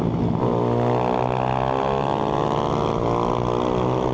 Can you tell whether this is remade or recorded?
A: recorded